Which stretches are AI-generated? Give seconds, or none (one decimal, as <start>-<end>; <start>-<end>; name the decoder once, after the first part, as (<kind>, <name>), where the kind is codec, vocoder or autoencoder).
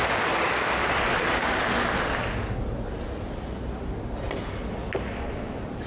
1.1-1.6 (vocoder, BigVGAN v2)